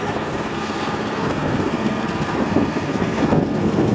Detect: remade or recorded remade